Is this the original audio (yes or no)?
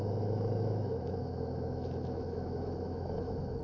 no